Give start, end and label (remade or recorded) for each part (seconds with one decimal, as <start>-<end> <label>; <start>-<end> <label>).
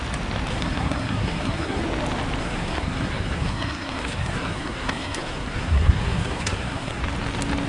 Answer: 0.0-0.5 recorded; 0.5-1.8 remade; 1.8-2.4 recorded; 2.4-7.0 remade; 7.0-7.7 recorded